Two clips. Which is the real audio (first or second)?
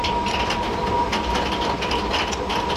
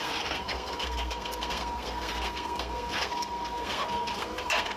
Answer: first